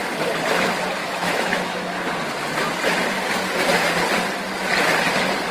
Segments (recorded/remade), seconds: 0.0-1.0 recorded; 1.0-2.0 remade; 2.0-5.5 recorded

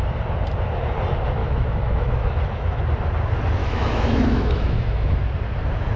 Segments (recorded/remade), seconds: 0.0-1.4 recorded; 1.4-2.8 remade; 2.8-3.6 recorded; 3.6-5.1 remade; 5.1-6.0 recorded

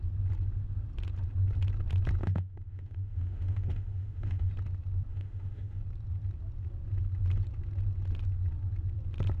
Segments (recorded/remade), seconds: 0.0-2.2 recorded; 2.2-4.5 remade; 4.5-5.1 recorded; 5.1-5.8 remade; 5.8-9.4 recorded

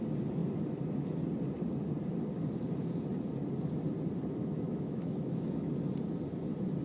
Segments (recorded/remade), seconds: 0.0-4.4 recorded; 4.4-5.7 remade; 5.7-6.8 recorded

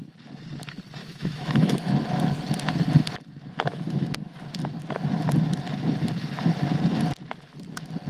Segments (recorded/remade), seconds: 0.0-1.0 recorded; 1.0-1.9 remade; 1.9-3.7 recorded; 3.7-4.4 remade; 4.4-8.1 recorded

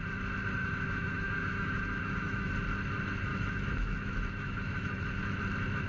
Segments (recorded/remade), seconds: 0.0-0.6 recorded; 0.6-2.5 remade; 2.5-3.3 recorded; 3.3-5.4 remade; 5.4-5.9 recorded

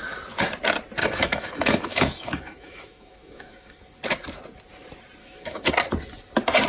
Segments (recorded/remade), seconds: 0.0-1.0 recorded; 1.0-3.9 remade; 3.9-5.2 recorded; 5.2-5.7 remade; 5.7-6.7 recorded

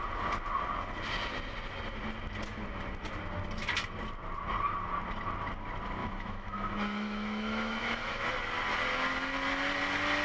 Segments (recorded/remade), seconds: 0.0-6.0 recorded; 6.0-8.3 remade; 8.3-10.2 recorded